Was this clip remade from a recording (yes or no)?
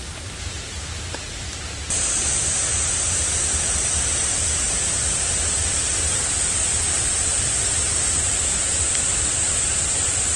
no